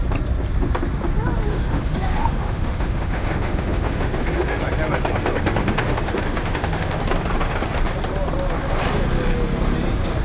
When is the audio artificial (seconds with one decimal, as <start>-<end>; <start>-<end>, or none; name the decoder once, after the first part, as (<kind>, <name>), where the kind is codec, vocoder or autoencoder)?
1.5-4.6 (autoencoder, DAC-VAE); 5.6-7.0